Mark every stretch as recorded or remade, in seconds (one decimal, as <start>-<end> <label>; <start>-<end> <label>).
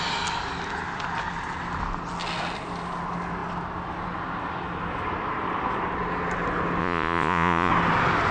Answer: 0.0-6.8 recorded; 6.8-7.7 remade; 7.7-8.3 recorded